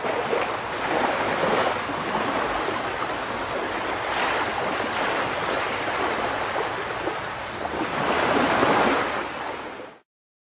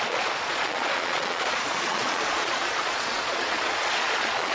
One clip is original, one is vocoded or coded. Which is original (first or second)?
first